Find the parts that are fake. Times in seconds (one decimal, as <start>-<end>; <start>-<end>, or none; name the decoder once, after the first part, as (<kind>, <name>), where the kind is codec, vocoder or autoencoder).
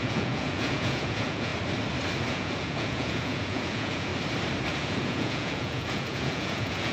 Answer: 0.0-1.5 (vocoder, Vocos); 2.3-4.1; 4.7-6.9